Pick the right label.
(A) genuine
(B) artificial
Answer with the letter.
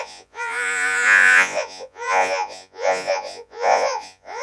B